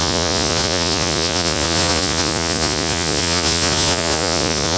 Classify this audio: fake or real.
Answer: fake